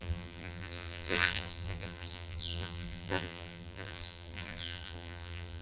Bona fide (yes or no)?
no